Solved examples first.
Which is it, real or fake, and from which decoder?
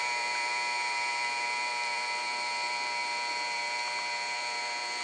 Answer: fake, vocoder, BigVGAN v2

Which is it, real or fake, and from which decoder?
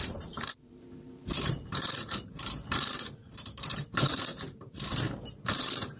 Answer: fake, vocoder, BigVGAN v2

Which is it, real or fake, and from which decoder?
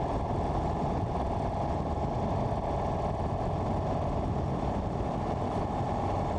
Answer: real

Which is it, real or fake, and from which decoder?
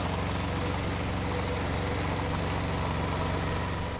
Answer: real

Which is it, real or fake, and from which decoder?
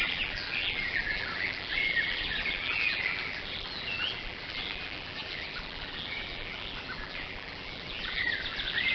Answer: fake, vocoder, BigVGAN v2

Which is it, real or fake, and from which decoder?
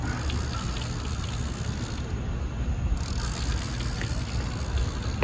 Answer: real